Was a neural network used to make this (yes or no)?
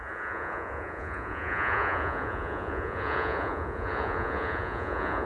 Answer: yes